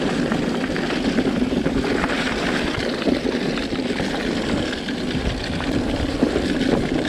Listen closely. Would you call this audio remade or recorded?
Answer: recorded